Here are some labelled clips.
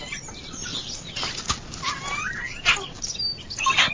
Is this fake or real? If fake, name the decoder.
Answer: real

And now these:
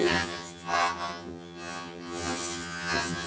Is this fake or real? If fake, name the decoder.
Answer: fake, vocoder, HiFi-GAN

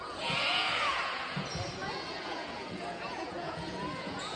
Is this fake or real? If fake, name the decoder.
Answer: fake, vocoder, Vocos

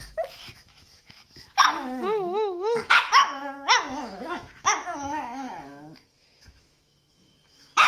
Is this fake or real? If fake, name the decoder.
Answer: fake, autoencoder, DAC-VAE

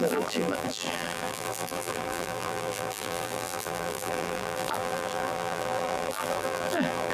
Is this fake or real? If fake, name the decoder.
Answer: fake, vocoder, BigVGAN v2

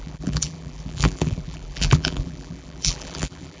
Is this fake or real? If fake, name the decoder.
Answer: fake, vocoder, BigVGAN v2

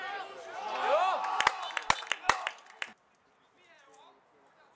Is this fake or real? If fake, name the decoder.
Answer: real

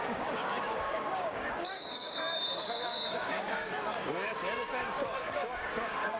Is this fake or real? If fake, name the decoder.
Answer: fake, codec, DAC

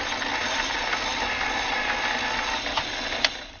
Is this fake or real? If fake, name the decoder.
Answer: real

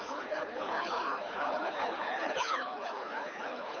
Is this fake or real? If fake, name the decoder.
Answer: fake, codec, HILCodec